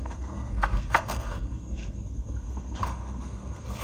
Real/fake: fake